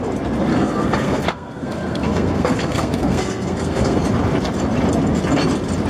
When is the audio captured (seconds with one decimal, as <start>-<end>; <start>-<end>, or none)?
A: 0.0-0.5; 4.0-5.9